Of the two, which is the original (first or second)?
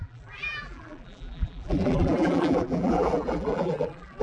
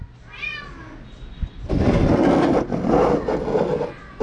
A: second